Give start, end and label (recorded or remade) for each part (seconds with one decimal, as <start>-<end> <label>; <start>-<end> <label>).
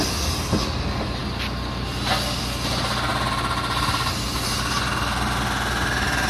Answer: 0.0-6.3 recorded